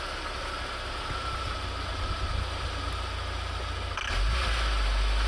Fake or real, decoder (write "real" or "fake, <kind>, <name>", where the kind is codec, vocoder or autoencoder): real